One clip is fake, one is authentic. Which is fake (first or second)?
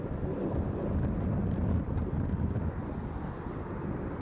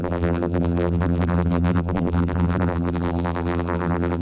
second